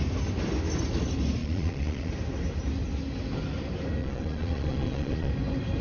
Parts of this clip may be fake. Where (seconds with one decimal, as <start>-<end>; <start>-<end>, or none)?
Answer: 1.4-2.1; 4.0-5.3